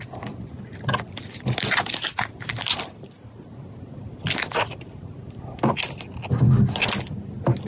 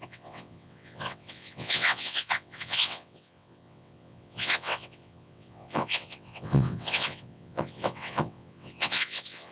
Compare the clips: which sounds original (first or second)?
first